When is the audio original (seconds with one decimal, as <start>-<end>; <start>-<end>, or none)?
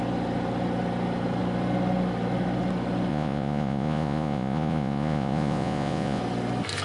0.0-3.1; 6.2-6.8